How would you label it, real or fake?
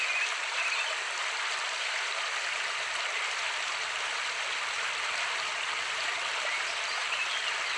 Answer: real